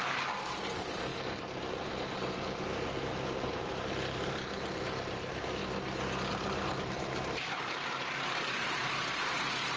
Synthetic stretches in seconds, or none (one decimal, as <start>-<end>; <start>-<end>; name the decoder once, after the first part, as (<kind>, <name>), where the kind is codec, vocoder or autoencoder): 0.0-1.1 (vocoder, BigVGAN v2); 3.1-5.6; 6.3-9.8